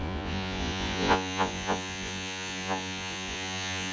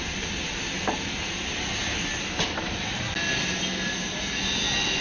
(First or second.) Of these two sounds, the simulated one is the first